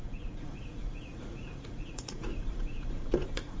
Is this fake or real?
fake